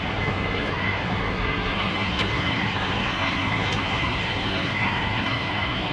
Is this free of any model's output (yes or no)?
no